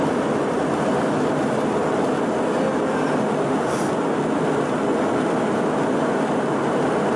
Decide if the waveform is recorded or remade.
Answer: recorded